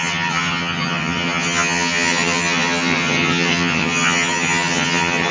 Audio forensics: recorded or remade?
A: remade